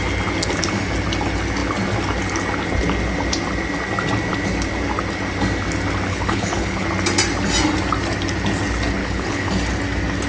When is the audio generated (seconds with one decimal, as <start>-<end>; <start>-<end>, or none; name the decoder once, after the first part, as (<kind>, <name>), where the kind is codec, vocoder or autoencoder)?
6.1-6.9 (codec, HILCodec); 9.0-9.5